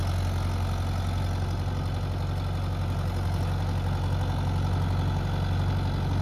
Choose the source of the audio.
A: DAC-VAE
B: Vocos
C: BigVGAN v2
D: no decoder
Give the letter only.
D